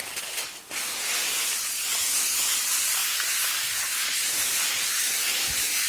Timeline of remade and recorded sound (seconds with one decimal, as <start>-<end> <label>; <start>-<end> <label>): 0.0-5.9 recorded

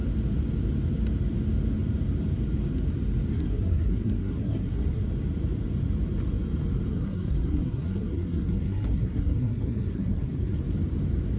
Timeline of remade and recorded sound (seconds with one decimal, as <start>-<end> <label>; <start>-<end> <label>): 0.0-3.3 recorded; 3.3-5.0 remade; 5.0-6.9 recorded; 6.9-10.6 remade; 10.6-11.4 recorded

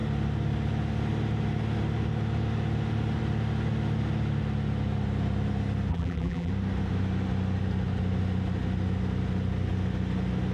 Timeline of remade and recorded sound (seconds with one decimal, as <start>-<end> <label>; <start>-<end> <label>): 0.0-5.9 recorded; 5.9-6.5 remade; 6.5-10.5 recorded

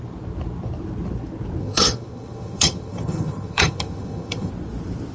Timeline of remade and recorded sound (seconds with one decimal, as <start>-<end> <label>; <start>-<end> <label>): 0.0-1.6 recorded; 1.6-4.5 remade; 4.5-5.1 recorded

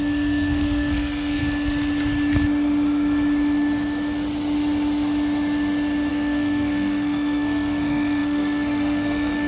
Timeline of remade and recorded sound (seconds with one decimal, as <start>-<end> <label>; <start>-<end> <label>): 0.0-1.4 remade; 1.4-6.1 recorded; 6.1-9.5 remade

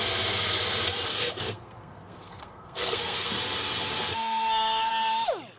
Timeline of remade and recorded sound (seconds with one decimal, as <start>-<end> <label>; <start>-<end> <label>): 0.0-1.1 recorded; 1.1-3.3 remade; 3.3-4.1 recorded; 4.1-4.9 remade; 4.9-5.6 recorded

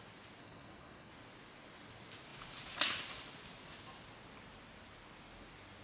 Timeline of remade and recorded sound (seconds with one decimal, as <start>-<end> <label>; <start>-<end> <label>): 0.0-0.4 recorded; 0.4-1.1 remade; 1.1-5.8 recorded

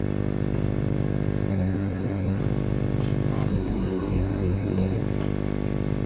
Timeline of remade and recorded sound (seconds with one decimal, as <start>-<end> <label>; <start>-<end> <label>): 0.0-1.5 recorded; 1.5-2.4 remade; 2.4-3.5 recorded; 3.5-5.0 remade; 5.0-6.1 recorded